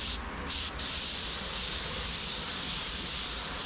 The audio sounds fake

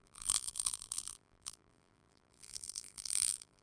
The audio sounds fake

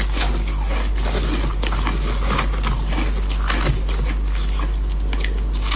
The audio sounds real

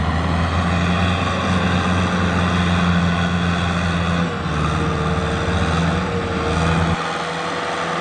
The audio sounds real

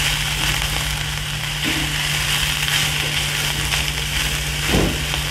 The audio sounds real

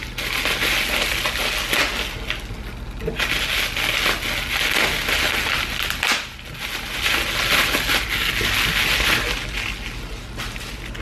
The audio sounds real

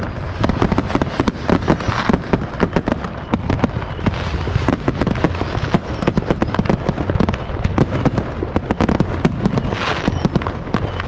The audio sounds real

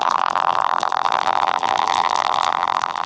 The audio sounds fake